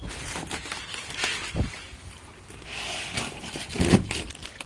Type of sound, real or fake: real